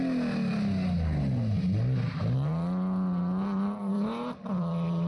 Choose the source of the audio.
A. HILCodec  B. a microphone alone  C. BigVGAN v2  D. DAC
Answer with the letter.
B